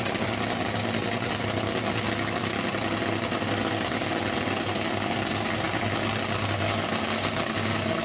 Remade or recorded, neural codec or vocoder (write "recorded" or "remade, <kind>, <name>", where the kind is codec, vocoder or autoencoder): recorded